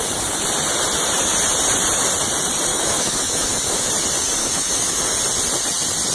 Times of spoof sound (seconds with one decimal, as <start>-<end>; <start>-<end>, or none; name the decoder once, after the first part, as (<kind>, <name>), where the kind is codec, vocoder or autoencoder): 2.7-3.9 (autoencoder, DAC-VAE); 4.4-5.0

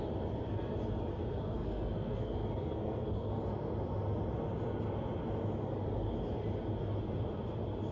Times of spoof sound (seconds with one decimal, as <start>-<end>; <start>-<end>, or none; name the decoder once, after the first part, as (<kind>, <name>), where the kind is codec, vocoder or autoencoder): 1.1-3.3 (codec, SNAC)

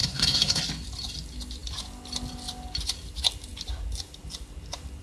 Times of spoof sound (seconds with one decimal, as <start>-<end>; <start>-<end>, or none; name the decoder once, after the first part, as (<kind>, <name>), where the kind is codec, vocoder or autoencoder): 0.0-0.6 (codec, SNAC)

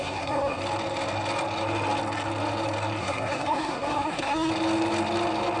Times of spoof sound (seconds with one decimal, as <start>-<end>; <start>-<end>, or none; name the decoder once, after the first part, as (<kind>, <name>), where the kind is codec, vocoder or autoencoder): 0.0-0.6 (codec, SNAC); 3.0-4.5

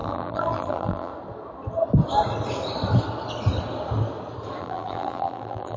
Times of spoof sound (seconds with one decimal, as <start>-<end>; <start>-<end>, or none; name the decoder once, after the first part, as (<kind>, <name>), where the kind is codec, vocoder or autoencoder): 0.0-1.1 (vocoder, BigVGAN v2); 4.6-5.8

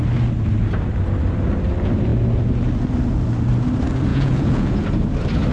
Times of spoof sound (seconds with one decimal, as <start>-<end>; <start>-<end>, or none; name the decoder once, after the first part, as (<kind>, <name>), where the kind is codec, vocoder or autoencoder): 4.1-4.7 (vocoder, Vocos)